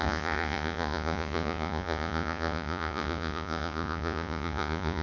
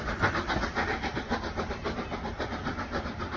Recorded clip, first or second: second